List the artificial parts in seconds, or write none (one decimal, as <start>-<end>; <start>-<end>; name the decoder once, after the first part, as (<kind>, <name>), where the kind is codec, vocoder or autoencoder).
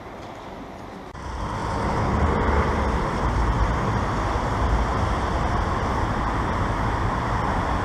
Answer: 1.6-5.7 (vocoder, BigVGAN v2)